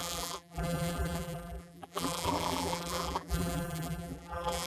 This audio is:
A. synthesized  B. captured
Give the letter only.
A